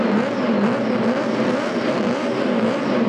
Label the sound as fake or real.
real